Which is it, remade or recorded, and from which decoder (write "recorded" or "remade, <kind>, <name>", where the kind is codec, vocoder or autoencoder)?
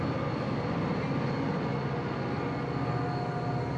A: recorded